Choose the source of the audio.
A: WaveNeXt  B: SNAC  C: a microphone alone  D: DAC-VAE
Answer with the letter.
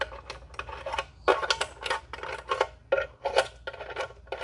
C